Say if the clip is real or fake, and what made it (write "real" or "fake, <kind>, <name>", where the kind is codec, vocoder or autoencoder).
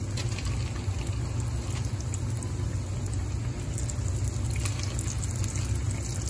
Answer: real